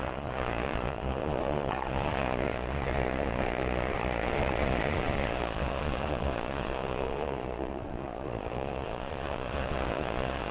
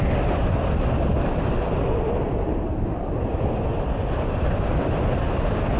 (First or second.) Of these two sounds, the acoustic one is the second